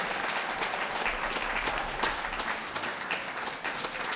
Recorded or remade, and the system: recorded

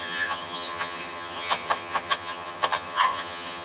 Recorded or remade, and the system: remade, vocoder, HiFi-GAN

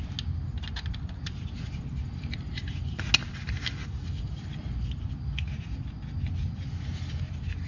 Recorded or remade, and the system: recorded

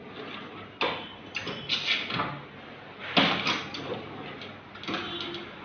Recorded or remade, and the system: recorded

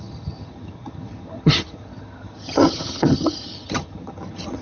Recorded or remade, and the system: remade, vocoder, HiFi-GAN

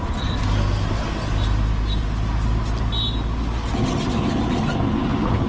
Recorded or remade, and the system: recorded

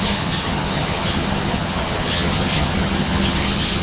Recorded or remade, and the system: remade, vocoder, HiFi-GAN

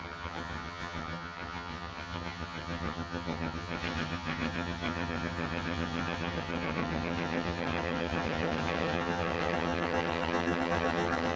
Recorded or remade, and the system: remade, vocoder, HiFi-GAN